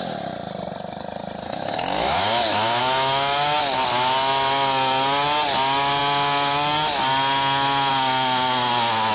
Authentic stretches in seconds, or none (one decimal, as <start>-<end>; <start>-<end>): 0.0-1.4; 2.8-9.1